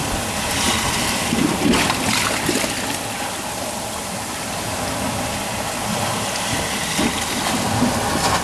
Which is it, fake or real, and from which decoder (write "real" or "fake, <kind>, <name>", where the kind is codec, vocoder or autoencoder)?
real